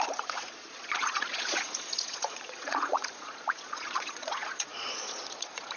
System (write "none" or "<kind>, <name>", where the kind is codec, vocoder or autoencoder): vocoder, Vocos